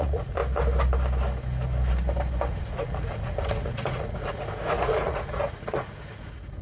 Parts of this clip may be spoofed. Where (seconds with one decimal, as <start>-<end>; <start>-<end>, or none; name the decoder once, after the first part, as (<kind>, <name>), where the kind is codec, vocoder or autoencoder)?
0.0-0.4 (vocoder, Vocos); 2.5-6.6